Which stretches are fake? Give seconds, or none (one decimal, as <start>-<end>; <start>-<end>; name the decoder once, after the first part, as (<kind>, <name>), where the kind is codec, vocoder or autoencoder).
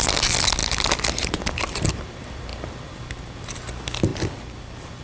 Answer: none